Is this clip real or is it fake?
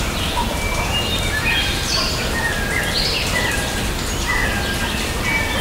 real